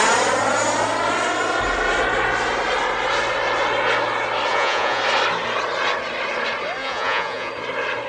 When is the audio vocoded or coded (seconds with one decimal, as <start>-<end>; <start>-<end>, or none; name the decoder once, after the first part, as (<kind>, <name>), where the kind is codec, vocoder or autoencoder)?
4.5-5.0 (vocoder, Vocos); 6.8-7.5